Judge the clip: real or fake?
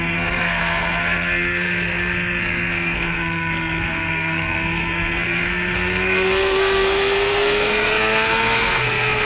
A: fake